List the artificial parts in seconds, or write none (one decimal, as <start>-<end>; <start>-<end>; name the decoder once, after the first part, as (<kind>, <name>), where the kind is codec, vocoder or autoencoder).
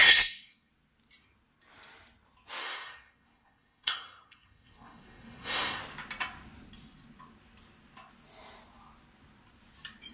0.0-0.7 (codec, SNAC); 2.6-5.8